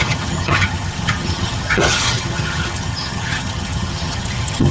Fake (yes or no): yes